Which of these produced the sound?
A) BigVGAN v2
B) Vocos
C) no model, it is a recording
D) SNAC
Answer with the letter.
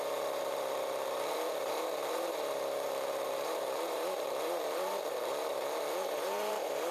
A